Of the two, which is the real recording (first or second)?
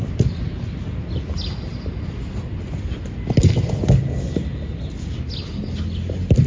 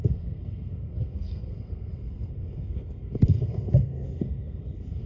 first